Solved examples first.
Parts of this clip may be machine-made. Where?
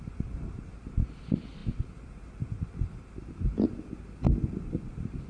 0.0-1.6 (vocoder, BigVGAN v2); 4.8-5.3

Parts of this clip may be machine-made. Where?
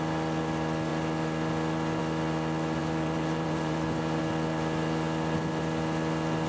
2.8-4.2 (vocoder, BigVGAN v2)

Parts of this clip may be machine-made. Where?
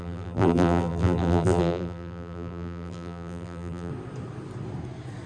0.0-3.9 (vocoder, BigVGAN v2)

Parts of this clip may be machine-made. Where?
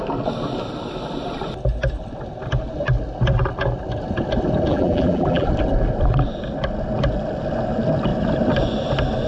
4.7-5.5 (vocoder, BigVGAN v2)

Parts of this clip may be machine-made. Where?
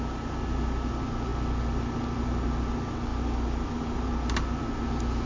1.3-2.6 (vocoder, BigVGAN v2); 3.1-4.6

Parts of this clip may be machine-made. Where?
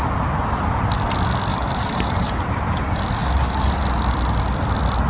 1.5-2.6 (vocoder, BigVGAN v2); 3.2-3.8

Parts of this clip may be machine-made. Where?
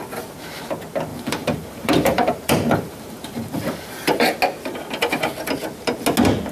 1.1-4.4 (vocoder, BigVGAN v2)